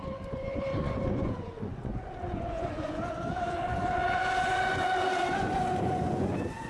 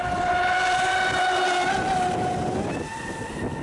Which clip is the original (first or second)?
second